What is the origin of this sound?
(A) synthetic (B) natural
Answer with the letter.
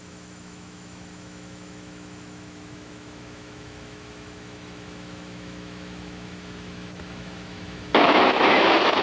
A